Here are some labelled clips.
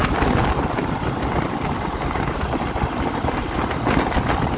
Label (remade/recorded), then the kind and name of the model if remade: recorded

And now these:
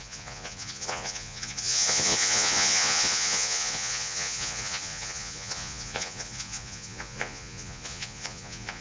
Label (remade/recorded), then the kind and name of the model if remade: remade, vocoder, Vocos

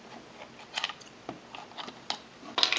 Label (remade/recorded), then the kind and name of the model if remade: recorded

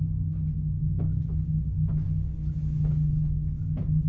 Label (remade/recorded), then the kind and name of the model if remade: recorded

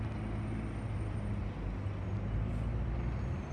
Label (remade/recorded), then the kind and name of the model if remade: recorded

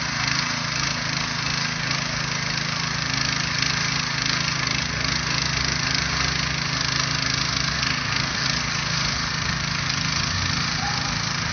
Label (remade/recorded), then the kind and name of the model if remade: recorded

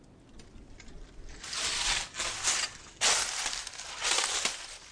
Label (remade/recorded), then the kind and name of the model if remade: recorded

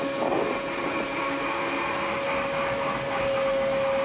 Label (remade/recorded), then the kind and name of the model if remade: recorded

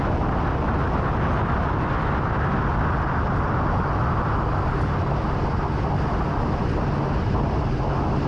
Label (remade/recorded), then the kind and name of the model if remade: recorded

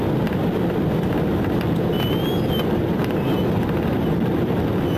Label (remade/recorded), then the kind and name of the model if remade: recorded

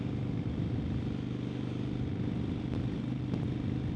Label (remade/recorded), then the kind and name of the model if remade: recorded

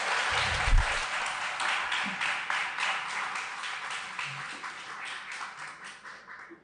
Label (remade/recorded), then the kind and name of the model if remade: recorded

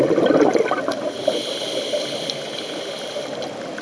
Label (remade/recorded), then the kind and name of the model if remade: recorded